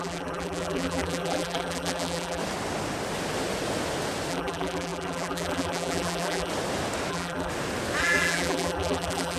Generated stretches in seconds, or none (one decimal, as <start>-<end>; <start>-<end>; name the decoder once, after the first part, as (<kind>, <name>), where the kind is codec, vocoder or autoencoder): 0.0-2.4 (vocoder, BigVGAN v2); 4.3-6.5; 7.1-7.5; 8.0-9.4